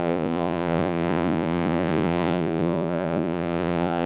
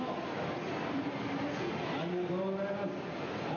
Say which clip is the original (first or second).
second